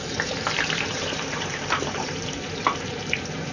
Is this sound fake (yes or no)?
yes